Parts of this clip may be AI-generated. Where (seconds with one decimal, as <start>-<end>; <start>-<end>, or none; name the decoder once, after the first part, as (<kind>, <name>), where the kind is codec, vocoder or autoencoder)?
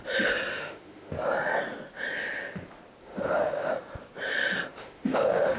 0.5-1.1 (autoencoder, DAC-VAE); 3.0-3.7; 4.8-5.6